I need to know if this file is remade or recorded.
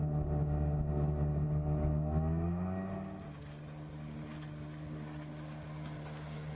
recorded